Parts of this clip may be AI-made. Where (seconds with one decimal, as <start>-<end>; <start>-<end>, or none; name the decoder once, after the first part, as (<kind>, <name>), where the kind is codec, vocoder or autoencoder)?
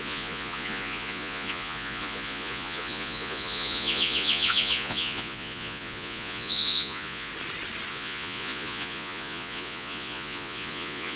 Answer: 0.0-7.3 (vocoder, Vocos); 7.9-11.2